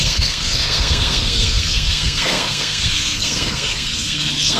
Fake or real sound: fake